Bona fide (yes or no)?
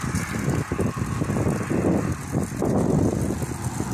yes